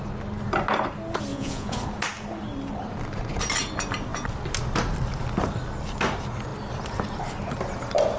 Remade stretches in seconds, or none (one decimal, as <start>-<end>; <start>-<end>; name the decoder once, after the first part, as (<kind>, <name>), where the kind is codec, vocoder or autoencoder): 1.3-1.8 (vocoder, Vocos)